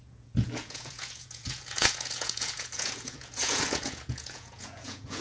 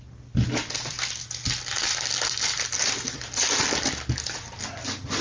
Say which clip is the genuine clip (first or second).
second